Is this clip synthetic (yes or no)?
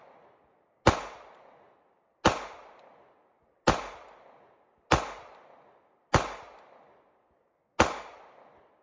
no